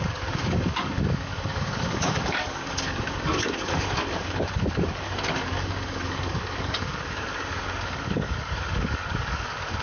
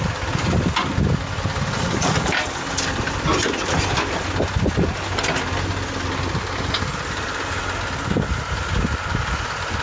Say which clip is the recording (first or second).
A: second